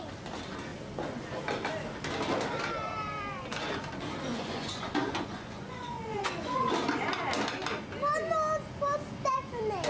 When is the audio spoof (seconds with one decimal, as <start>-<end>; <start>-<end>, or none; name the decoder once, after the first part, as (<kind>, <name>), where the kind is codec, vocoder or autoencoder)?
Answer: 4.3-6.7 (vocoder, Vocos)